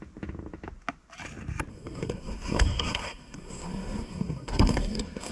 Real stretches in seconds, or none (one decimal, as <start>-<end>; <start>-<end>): 0.0-1.7